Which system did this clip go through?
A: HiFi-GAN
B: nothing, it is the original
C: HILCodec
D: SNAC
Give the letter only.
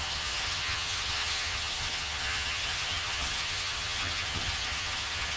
A